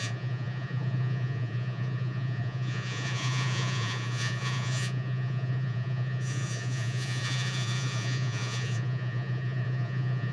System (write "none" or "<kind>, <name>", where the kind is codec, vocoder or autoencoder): vocoder, Vocos